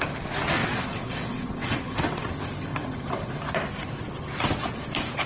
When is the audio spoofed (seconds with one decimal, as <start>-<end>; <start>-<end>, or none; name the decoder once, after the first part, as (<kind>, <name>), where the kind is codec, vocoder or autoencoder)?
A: 0.6-2.3 (vocoder, WaveNeXt); 2.7-3.4